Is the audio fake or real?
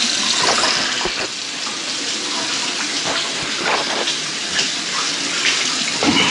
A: real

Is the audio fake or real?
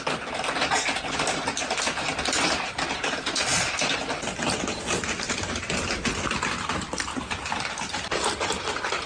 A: real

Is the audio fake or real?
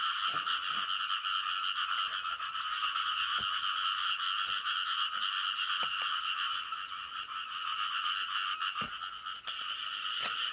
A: real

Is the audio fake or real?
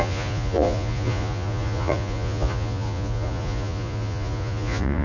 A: fake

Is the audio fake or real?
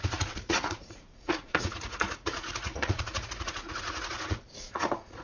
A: fake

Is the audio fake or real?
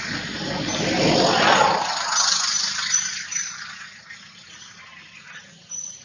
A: real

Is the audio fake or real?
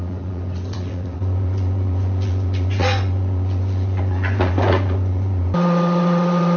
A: fake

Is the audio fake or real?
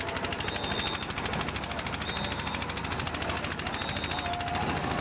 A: real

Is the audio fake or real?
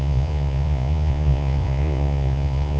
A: fake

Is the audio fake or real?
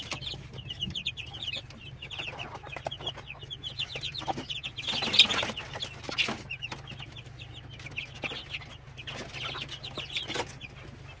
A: real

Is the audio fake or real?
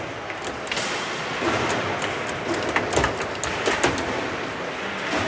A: real